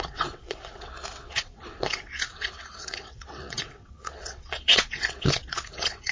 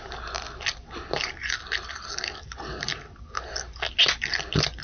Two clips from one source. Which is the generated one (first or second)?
first